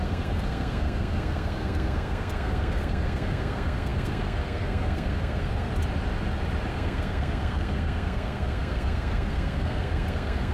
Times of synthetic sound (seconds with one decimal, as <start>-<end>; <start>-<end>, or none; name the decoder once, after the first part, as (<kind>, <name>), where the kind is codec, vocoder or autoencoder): 0.0-5.7 (codec, SNAC); 6.7-10.5